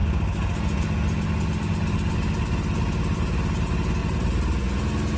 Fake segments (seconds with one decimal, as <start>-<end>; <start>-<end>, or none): 4.0-4.6